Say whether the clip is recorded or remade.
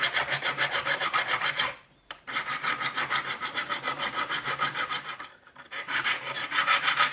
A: remade